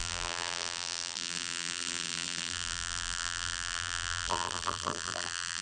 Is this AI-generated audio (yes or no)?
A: yes